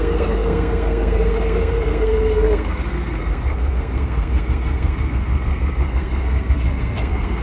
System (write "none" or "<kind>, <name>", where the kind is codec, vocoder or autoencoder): codec, SNAC